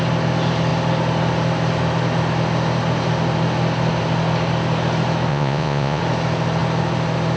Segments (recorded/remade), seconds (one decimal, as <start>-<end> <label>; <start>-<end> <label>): 0.0-5.3 recorded; 5.3-6.0 remade; 6.0-7.4 recorded